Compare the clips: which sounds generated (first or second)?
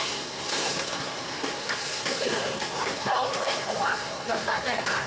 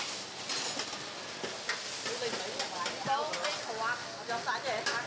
first